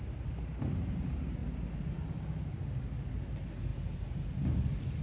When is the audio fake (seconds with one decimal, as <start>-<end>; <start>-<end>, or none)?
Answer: none